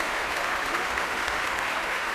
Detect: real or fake fake